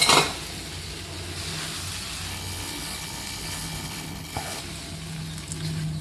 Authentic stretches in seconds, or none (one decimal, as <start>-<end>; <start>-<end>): 0.0-2.3; 4.6-6.0

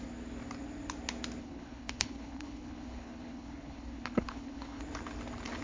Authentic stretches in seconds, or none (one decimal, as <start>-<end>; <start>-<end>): 0.0-1.4; 4.8-5.6